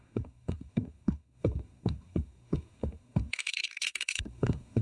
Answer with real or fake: fake